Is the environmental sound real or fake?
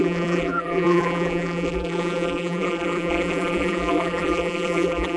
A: fake